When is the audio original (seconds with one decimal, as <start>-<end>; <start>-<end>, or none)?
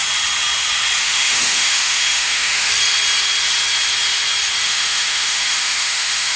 0.0-1.0; 2.7-4.6